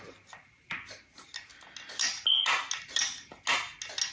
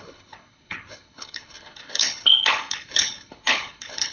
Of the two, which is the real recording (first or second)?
first